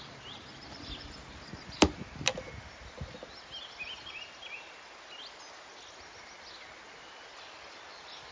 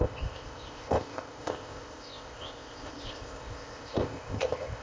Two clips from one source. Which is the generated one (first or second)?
second